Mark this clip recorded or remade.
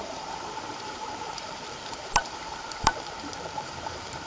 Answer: remade